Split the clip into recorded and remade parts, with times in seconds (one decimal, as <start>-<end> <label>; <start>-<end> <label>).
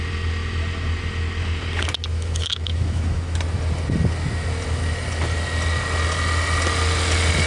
0.0-2.1 recorded; 2.1-3.4 remade; 3.4-7.5 recorded